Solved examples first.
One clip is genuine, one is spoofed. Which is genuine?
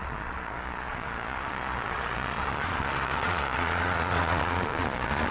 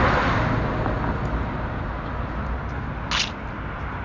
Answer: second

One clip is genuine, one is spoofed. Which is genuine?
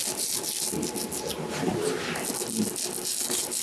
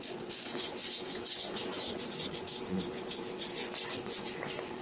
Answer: first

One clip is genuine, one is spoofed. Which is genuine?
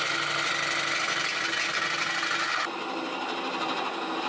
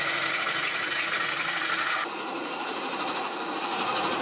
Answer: first